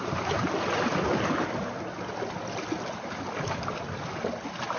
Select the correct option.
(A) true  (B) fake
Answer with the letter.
A